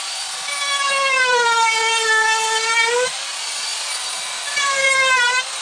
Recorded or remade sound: recorded